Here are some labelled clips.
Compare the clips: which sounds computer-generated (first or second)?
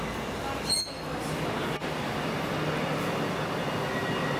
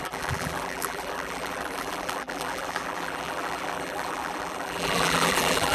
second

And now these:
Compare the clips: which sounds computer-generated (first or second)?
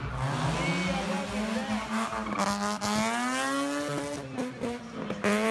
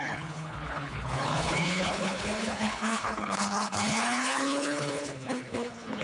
second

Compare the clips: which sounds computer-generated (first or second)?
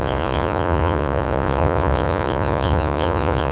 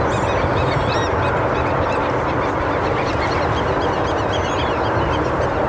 first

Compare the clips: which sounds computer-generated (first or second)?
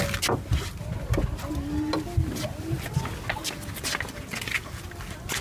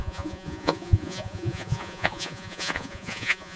second